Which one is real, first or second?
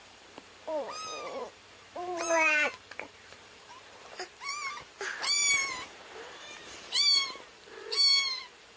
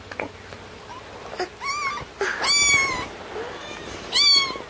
second